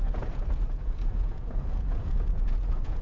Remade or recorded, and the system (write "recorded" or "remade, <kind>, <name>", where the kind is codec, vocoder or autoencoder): remade, vocoder, Vocos